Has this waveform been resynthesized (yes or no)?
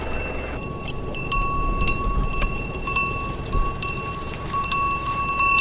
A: no